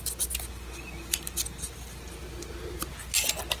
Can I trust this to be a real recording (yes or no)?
yes